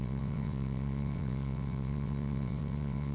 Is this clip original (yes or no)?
no